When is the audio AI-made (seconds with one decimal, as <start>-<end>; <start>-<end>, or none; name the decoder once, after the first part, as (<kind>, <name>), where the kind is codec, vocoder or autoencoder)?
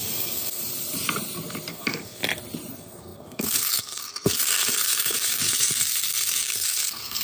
0.0-0.6 (codec, SNAC); 1.7-2.2; 2.7-7.2